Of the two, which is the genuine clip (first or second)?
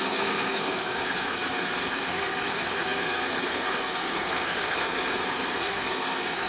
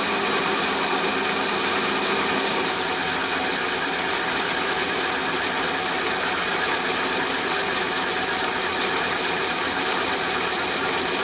second